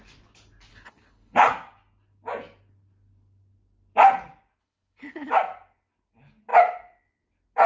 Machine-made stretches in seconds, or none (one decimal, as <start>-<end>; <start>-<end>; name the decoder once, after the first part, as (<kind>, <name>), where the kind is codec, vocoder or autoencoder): 0.7-1.5 (codec, HILCodec); 4.6-5.3